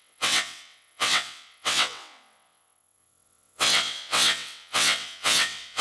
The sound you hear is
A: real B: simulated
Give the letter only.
B